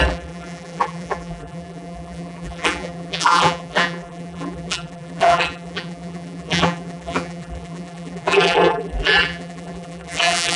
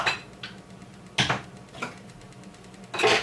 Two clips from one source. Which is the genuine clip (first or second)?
second